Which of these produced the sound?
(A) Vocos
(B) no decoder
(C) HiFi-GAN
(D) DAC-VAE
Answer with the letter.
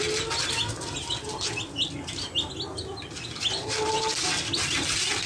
B